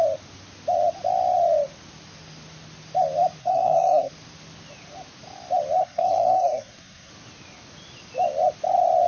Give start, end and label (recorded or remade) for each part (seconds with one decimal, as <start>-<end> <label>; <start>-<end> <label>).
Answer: 0.0-3.4 recorded; 3.4-4.1 remade; 4.1-5.8 recorded; 5.8-7.1 remade; 7.1-9.1 recorded